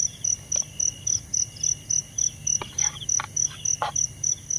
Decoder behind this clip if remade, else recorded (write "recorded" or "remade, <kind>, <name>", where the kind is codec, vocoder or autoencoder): recorded